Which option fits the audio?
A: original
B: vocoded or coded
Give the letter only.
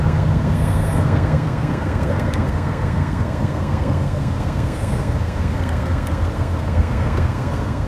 B